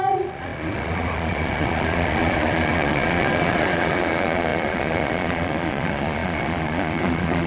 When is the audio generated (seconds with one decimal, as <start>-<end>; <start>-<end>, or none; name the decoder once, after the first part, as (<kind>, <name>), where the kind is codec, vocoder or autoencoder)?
0.0-7.5 (vocoder, Vocos)

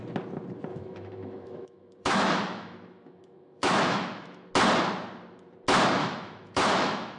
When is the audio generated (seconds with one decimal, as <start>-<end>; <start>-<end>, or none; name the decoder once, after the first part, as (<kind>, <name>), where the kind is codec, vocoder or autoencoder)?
0.7-4.5 (autoencoder, DAC-VAE); 6.0-7.2

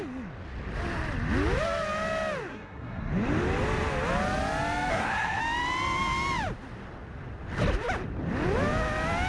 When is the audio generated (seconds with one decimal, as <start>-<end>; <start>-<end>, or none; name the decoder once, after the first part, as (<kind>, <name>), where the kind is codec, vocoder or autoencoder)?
2.5-3.1 (codec, SNAC); 4.9-5.4

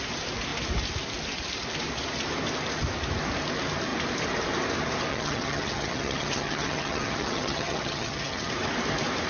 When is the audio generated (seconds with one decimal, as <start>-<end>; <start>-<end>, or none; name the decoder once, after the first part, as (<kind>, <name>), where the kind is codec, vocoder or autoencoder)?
5.1-8.5 (vocoder, HiFi-GAN)

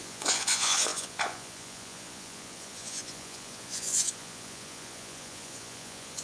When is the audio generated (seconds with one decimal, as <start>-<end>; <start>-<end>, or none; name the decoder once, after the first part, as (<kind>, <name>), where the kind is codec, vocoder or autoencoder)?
0.0-6.2 (vocoder, Vocos)

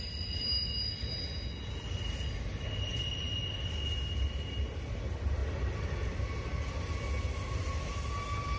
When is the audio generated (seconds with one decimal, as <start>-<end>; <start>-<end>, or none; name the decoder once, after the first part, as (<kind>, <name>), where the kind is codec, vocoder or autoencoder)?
none